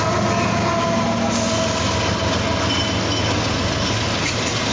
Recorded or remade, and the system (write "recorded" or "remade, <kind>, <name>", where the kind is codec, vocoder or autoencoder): recorded